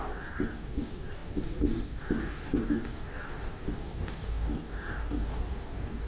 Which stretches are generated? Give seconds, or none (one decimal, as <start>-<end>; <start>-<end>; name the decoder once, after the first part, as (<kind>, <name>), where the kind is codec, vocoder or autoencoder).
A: 0.0-6.1 (codec, DAC)